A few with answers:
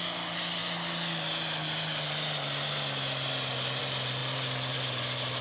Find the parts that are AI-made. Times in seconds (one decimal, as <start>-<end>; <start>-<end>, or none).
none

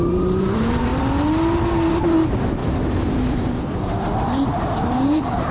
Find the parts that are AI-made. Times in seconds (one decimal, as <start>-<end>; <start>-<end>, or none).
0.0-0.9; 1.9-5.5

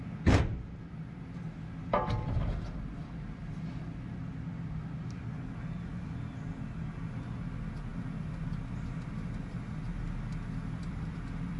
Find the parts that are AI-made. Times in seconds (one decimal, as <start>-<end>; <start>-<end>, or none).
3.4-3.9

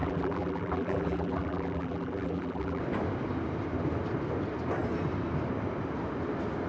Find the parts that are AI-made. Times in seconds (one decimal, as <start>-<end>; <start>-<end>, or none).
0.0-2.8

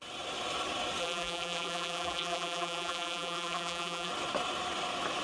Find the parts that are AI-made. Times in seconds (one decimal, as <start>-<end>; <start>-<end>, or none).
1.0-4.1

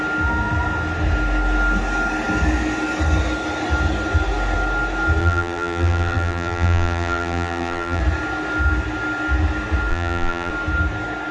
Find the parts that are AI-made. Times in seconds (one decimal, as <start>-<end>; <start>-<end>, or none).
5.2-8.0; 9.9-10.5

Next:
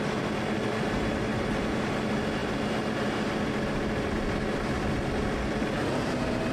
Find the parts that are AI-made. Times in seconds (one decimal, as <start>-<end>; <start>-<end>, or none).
1.3-1.9

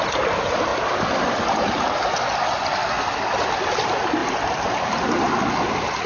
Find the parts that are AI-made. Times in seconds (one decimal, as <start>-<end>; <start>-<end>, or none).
4.2-5.0